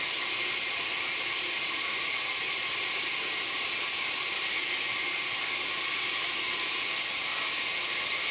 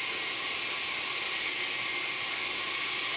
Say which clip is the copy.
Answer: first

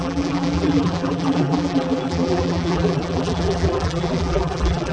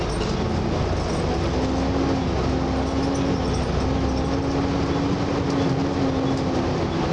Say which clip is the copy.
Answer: first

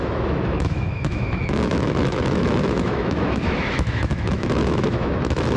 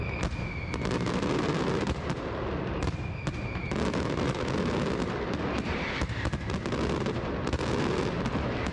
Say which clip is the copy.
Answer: first